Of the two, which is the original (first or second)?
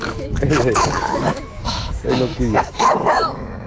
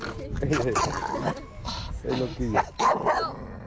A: second